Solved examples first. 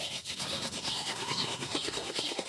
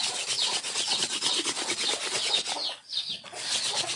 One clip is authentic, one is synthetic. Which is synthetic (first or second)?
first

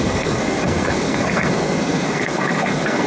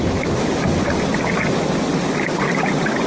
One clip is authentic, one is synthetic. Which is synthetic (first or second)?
first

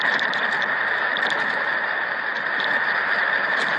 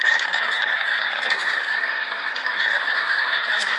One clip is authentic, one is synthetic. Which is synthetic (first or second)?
second